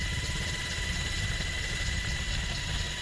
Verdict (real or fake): real